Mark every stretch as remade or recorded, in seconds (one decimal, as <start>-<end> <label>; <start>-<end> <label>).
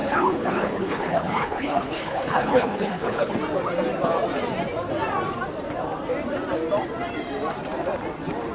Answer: 0.0-3.3 remade; 3.3-8.5 recorded